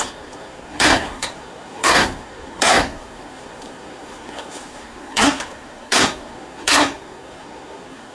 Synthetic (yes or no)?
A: yes